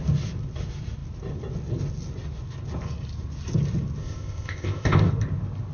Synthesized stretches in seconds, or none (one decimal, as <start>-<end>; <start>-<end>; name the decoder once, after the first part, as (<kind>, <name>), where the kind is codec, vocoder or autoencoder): 4.0-5.1 (codec, ZipCodec)